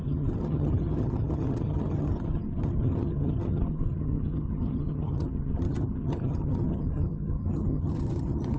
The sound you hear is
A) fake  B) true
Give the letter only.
A